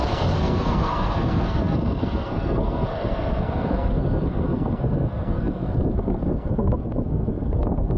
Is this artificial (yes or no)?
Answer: yes